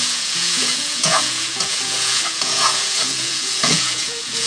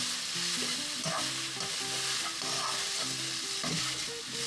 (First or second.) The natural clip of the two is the second